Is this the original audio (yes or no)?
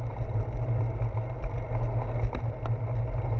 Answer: yes